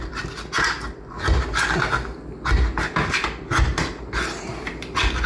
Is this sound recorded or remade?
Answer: recorded